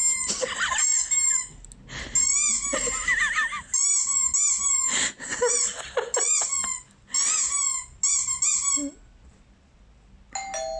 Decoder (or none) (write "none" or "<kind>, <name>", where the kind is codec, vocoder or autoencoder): none